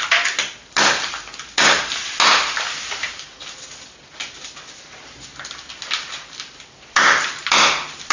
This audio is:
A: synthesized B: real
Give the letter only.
B